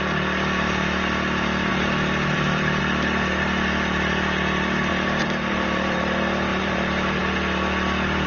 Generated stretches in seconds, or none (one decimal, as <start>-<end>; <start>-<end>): 1.7-2.8; 4.9-6.0; 6.5-7.2